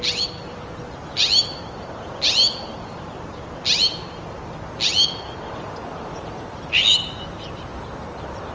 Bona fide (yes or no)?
yes